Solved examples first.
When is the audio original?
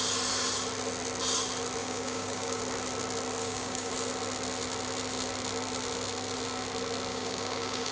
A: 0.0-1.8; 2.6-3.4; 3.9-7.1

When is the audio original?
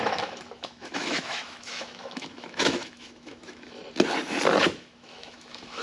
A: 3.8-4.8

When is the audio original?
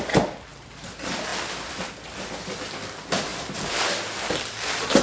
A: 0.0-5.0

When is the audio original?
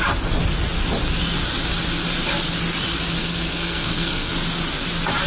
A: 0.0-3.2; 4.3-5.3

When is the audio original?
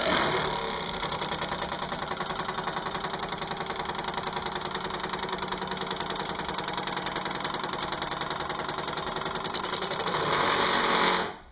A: 0.0-11.5